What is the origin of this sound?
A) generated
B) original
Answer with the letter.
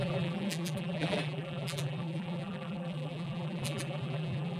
A